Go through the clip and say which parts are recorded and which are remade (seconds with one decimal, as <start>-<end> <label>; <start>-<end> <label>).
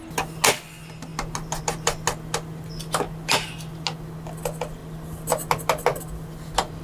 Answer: 0.0-6.8 recorded